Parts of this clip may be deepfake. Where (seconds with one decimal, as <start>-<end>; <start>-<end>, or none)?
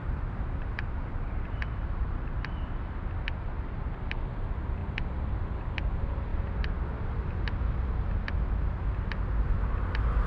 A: 0.0-2.2; 4.8-5.4